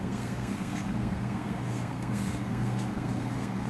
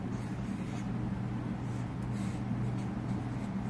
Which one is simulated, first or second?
first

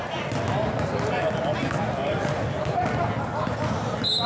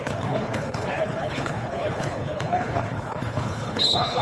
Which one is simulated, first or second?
second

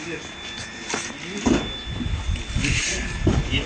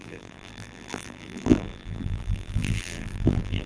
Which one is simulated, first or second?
second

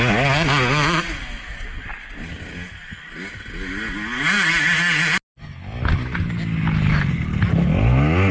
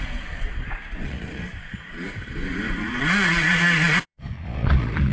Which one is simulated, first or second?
second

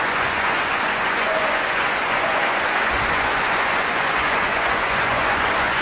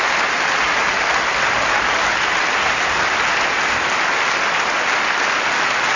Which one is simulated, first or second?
first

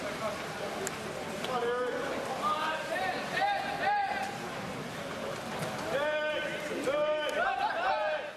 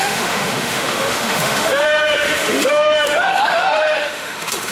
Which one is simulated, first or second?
second